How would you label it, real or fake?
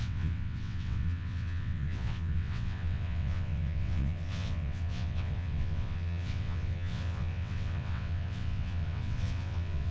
fake